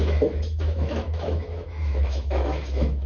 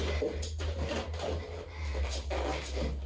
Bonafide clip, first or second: second